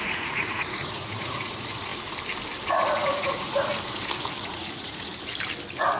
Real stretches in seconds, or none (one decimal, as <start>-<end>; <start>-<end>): 1.9-2.7; 3.7-4.4; 5.1-6.0